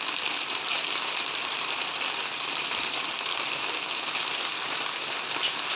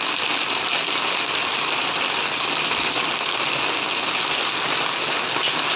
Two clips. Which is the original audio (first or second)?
second